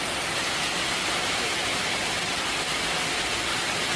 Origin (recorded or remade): recorded